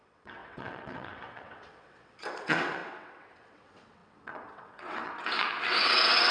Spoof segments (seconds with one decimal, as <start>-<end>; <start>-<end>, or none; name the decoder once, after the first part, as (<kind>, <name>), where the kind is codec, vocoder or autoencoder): 0.0-6.3 (vocoder, WaveNeXt)